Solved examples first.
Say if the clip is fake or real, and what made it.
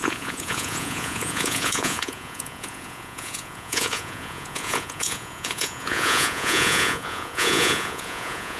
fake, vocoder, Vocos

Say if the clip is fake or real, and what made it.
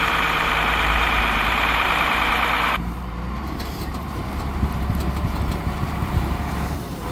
fake, vocoder, BigVGAN v2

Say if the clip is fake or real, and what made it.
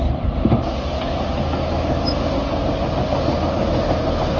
real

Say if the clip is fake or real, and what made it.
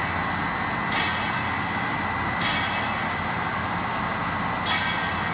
real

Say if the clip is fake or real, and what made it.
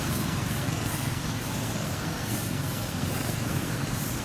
fake, codec, SNAC